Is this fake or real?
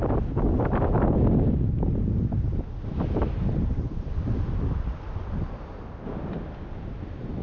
real